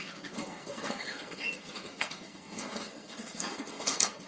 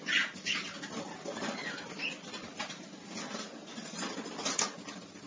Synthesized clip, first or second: first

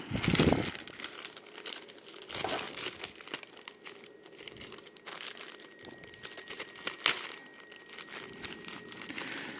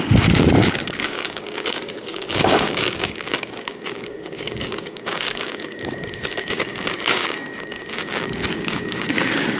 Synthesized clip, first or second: second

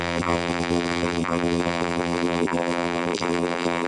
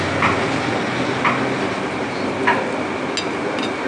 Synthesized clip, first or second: first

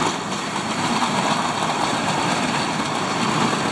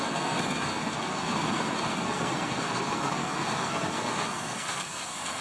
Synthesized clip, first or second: second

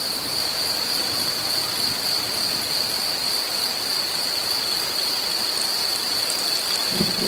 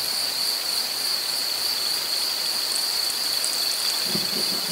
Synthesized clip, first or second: first